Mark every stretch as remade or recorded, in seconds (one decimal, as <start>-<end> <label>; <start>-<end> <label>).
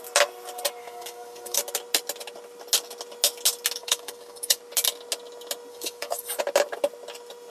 0.0-0.8 recorded; 0.8-1.6 remade; 1.6-3.8 recorded; 3.8-4.6 remade; 4.6-5.7 recorded; 5.7-6.4 remade; 6.4-7.5 recorded